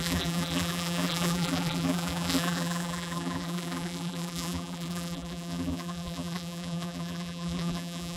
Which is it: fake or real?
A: fake